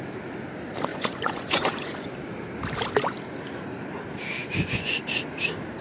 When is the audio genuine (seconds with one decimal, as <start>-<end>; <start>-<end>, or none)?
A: 0.0-0.9; 2.1-4.4; 5.0-5.8

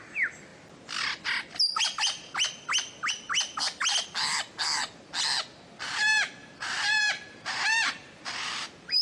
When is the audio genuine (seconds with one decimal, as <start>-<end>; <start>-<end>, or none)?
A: 0.0-6.4

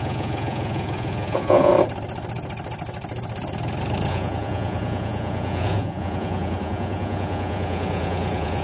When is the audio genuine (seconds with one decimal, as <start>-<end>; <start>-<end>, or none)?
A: 1.7-4.1

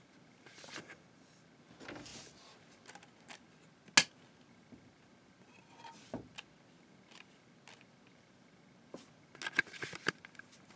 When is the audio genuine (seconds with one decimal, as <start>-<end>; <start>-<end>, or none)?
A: 0.0-10.8